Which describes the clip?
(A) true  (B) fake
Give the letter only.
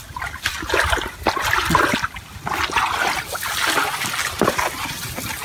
A